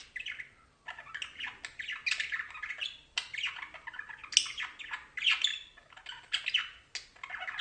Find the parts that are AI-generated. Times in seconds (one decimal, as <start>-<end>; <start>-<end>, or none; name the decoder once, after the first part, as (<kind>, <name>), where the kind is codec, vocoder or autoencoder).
none